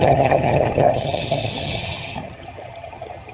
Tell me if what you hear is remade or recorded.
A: remade